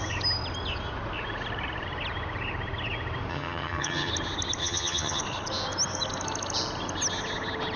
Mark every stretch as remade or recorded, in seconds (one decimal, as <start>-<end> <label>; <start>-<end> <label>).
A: 0.0-3.3 recorded; 3.3-4.1 remade; 4.1-4.6 recorded; 4.6-5.2 remade; 5.2-7.8 recorded